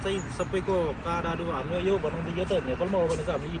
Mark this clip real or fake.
real